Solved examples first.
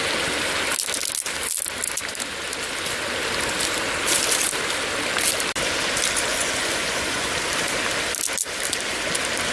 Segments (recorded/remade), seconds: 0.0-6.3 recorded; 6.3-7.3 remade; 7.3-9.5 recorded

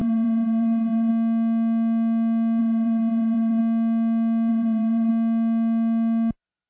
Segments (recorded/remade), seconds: 0.0-1.1 remade; 1.1-2.6 recorded; 2.6-3.6 remade; 3.6-4.5 recorded; 4.5-5.1 remade; 5.1-6.7 recorded

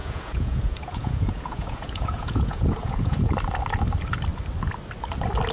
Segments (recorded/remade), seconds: 0.0-3.3 remade; 3.3-5.5 recorded

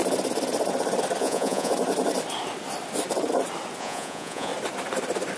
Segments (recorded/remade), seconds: 0.0-1.2 recorded; 1.2-1.7 remade; 1.7-3.8 recorded; 3.8-4.5 remade; 4.5-5.4 recorded

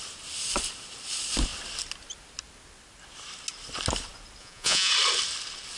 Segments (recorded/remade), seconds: 0.0-4.4 recorded; 4.4-4.9 remade; 4.9-5.8 recorded

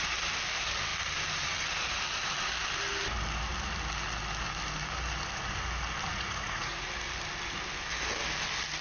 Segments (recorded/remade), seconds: 0.0-6.1 recorded; 6.1-6.9 remade; 6.9-8.8 recorded